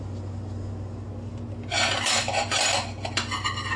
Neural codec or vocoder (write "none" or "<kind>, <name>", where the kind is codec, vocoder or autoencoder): none